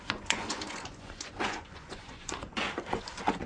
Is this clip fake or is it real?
fake